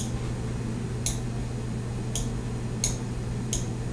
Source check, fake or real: real